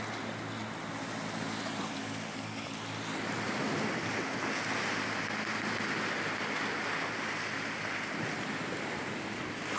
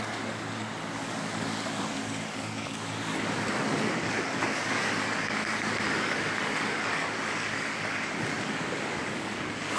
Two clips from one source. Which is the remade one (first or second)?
second